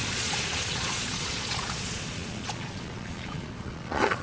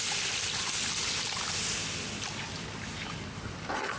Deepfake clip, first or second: first